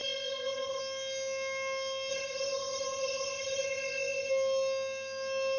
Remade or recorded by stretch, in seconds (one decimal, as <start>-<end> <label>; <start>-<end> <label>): 0.0-0.8 remade; 0.8-2.1 recorded; 2.1-4.3 remade; 4.3-5.6 recorded